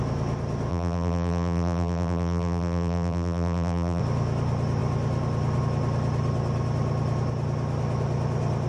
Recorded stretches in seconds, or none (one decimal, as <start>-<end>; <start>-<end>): 0.0-0.7; 4.0-8.7